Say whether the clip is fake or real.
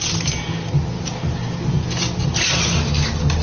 real